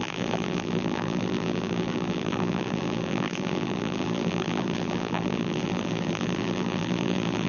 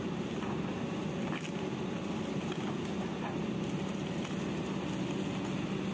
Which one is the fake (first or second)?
first